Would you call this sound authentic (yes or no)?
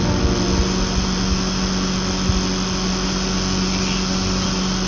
yes